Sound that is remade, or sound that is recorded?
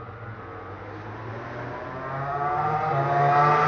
recorded